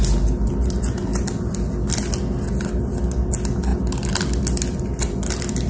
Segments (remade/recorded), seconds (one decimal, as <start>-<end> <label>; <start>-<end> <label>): 0.0-5.7 recorded